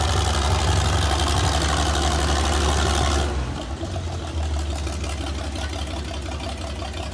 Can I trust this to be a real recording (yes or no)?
yes